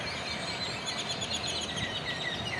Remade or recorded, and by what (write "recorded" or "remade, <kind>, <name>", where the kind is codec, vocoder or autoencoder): recorded